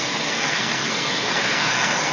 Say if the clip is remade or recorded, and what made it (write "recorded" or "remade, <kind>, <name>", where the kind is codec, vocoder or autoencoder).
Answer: remade, codec, SNAC